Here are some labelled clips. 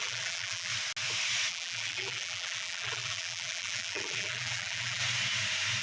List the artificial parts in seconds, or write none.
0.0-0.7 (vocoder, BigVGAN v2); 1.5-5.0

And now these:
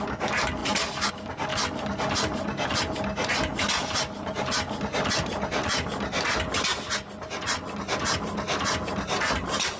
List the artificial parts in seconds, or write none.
none

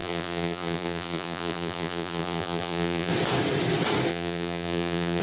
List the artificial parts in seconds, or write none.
0.0-3.1 (vocoder, BigVGAN v2); 4.1-5.2

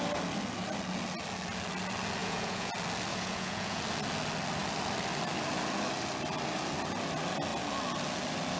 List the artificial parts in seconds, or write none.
2.2-2.7 (vocoder, Vocos); 3.1-3.8

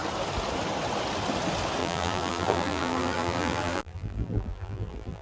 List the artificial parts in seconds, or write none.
1.8-5.2 (vocoder, BigVGAN v2)

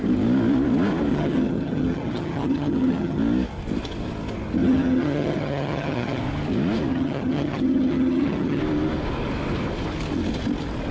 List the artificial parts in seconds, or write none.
1.1-3.2 (vocoder, HiFi-GAN); 4.6-6.2; 6.9-8.6

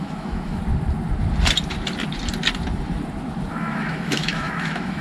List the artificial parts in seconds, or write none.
0.0-0.6 (autoencoder, DAC-VAE); 3.6-5.0

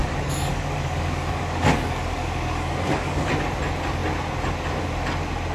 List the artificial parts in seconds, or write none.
0.0-3.3 (codec, DAC)